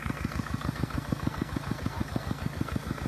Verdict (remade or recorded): remade